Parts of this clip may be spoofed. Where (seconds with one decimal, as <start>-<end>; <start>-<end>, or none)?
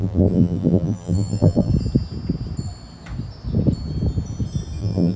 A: 0.0-1.7; 4.8-5.2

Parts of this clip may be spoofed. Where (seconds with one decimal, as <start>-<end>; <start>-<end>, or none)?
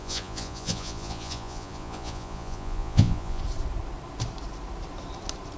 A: 0.0-3.4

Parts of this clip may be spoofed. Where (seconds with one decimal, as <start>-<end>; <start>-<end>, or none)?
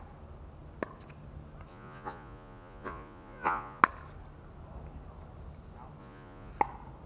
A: 1.7-3.8; 6.0-6.5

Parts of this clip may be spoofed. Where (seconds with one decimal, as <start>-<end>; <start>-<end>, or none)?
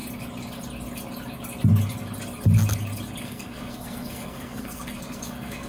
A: 3.2-5.7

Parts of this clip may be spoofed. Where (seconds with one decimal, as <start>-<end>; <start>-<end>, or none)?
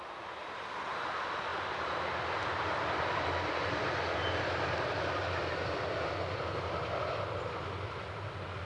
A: none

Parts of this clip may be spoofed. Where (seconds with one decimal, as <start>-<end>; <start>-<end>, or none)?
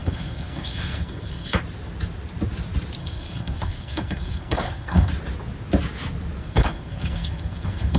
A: 0.0-1.6; 3.0-5.1; 6.4-8.0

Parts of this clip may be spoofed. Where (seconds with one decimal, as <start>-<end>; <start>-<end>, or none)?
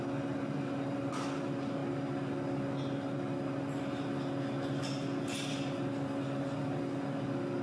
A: none